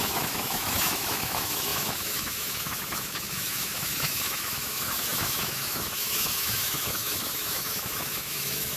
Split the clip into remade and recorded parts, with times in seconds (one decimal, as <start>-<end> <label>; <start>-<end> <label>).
0.0-8.8 remade